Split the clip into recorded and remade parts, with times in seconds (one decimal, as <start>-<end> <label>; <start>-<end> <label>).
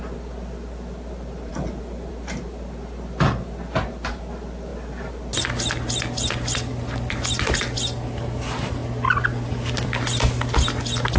0.0-11.2 recorded